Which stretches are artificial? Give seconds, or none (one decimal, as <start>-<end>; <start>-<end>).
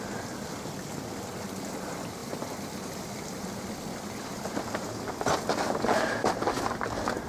2.2-6.6